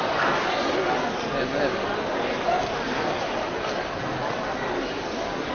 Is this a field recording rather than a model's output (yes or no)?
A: yes